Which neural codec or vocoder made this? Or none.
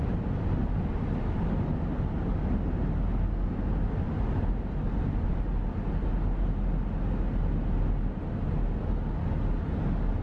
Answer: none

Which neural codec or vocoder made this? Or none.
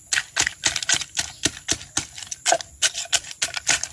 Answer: none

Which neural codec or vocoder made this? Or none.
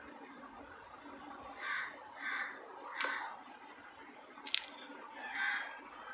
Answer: none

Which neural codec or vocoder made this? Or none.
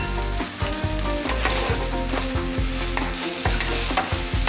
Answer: none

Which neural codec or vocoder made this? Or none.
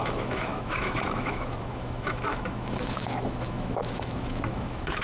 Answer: autoencoder, DAC-VAE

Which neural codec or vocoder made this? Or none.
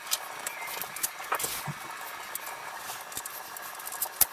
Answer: none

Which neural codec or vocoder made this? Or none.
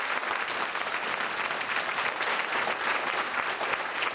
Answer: none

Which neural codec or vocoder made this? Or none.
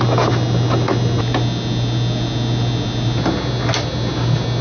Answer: none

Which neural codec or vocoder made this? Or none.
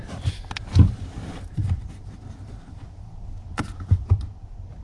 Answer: none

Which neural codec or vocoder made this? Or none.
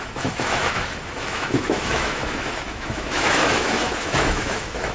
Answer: autoencoder, DAC-VAE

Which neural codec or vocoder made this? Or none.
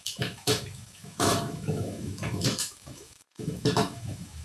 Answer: autoencoder, DAC-VAE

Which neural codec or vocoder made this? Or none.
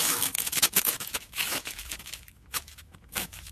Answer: autoencoder, DAC-VAE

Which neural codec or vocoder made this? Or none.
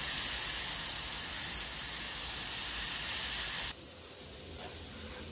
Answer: none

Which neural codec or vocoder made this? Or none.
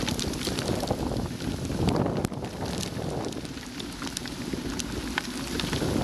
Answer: none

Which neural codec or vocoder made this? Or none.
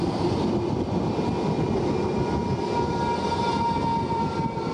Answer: none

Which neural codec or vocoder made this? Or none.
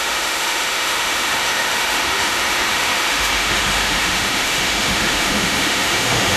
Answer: autoencoder, DAC-VAE